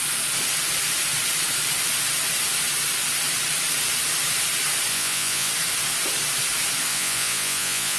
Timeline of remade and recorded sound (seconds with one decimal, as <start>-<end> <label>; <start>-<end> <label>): 0.0-4.9 recorded; 4.9-5.5 remade; 5.5-6.9 recorded; 6.9-8.0 remade